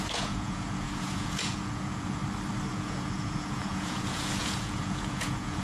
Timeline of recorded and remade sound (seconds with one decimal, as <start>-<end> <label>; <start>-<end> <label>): 0.0-2.2 remade; 2.2-2.7 recorded; 2.7-5.6 remade